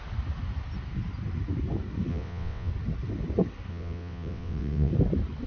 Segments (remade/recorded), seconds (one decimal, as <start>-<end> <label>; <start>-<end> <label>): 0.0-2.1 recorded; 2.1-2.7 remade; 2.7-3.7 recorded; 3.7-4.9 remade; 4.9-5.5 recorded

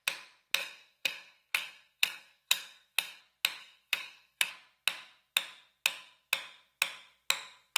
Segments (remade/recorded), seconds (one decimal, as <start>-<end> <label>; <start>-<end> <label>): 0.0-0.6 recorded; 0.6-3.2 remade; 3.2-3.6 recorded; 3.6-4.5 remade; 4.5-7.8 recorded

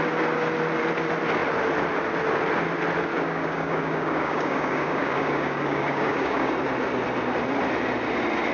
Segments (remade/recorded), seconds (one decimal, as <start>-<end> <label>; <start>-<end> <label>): 0.0-3.1 recorded; 3.1-6.5 remade; 6.5-8.5 recorded

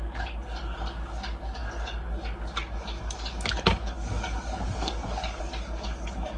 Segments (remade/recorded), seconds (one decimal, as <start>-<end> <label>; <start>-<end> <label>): 0.0-6.4 remade

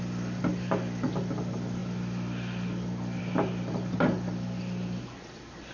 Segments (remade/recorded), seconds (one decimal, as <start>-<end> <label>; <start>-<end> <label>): 0.0-5.7 recorded

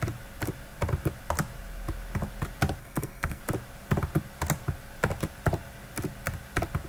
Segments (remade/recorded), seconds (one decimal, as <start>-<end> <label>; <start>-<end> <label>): 0.0-2.8 recorded; 2.8-3.4 remade; 3.4-6.9 recorded

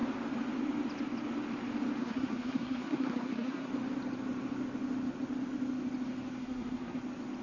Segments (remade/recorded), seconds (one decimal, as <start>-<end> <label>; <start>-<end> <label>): 0.0-2.0 recorded; 2.0-3.7 remade; 3.7-6.4 recorded; 6.4-7.0 remade; 7.0-7.4 recorded